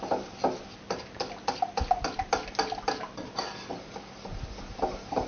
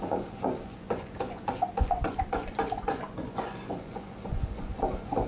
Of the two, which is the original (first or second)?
first